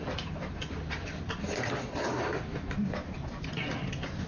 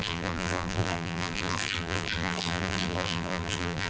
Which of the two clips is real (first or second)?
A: first